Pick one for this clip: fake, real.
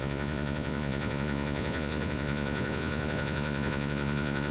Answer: fake